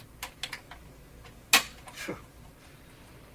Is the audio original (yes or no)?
yes